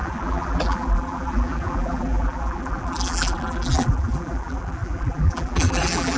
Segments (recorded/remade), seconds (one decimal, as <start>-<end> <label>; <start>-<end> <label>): 0.0-6.2 remade

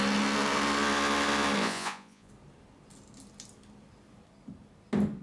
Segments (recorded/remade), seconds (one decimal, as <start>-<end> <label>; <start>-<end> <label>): 0.0-1.6 recorded; 1.6-2.3 remade; 2.3-5.2 recorded

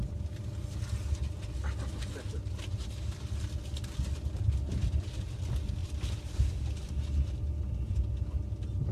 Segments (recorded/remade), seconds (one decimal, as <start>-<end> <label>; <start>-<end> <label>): 0.0-5.8 recorded; 5.8-6.3 remade; 6.3-8.9 recorded

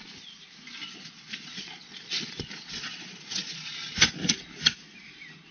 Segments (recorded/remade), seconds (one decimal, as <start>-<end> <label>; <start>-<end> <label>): 0.0-0.8 recorded; 0.8-4.1 remade; 4.1-5.5 recorded

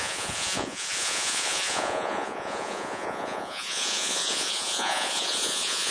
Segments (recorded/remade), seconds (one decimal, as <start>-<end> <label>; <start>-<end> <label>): 0.0-5.9 remade

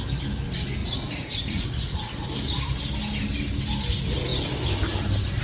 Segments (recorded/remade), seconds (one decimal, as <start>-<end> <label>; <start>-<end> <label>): 0.0-0.8 recorded; 0.8-2.3 remade; 2.3-5.4 recorded

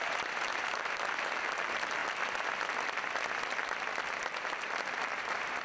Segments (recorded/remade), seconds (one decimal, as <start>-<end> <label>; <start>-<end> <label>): 0.0-2.0 remade; 2.0-5.0 recorded; 5.0-5.6 remade